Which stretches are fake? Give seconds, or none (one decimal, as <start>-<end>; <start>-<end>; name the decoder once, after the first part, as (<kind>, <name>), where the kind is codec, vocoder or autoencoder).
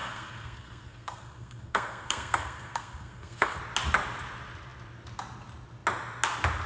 0.0-3.6 (codec, SNAC)